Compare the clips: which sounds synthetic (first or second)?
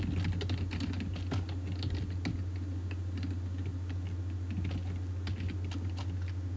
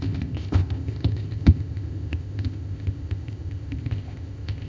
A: second